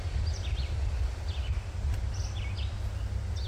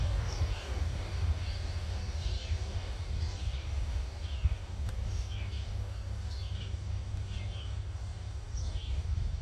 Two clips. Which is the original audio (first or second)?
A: first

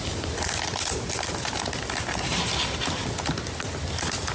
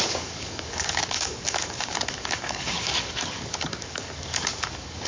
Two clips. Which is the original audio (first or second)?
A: first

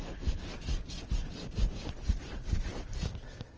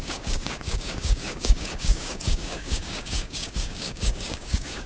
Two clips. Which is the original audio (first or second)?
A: first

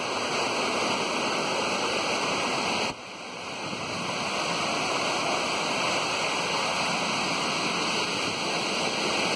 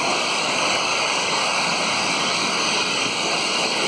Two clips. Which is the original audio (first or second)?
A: first